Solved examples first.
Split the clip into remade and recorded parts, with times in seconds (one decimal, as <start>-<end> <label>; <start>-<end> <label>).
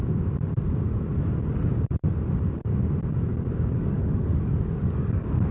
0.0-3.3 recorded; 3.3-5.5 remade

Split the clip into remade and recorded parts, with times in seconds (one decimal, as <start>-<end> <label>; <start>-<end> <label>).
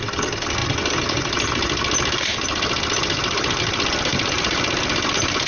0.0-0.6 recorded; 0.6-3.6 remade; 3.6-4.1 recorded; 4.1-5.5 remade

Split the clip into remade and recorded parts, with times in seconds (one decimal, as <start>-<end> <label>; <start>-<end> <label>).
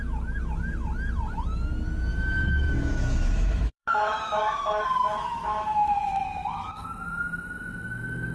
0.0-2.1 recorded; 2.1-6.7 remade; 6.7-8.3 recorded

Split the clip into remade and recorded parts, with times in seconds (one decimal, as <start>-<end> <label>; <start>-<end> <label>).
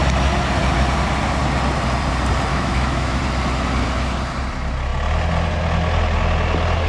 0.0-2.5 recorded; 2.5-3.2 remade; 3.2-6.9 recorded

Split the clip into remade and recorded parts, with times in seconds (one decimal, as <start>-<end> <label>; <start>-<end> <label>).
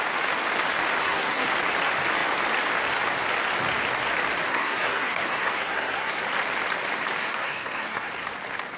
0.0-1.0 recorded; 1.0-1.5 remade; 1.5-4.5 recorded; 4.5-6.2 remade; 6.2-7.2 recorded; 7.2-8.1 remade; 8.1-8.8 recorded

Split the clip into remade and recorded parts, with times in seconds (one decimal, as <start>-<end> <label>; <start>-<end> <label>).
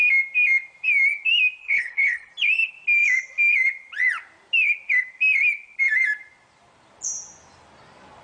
0.0-1.6 recorded; 1.6-2.3 remade; 2.3-8.2 recorded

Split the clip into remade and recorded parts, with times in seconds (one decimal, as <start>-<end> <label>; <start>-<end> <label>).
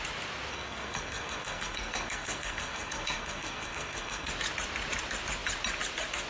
0.0-0.5 recorded; 0.5-4.3 remade; 4.3-6.3 recorded